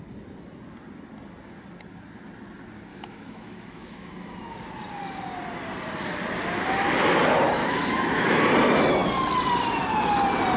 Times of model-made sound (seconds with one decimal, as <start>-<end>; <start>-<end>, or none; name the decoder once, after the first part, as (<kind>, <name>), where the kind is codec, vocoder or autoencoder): 2.9-4.1 (autoencoder, DAC-VAE); 7.6-8.4